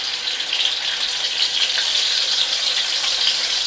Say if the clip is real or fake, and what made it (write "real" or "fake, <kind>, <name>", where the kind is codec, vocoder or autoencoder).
real